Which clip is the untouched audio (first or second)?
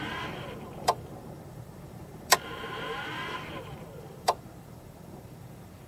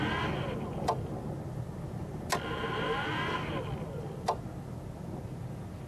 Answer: second